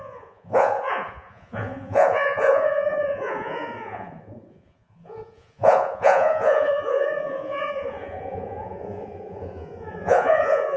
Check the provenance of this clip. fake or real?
fake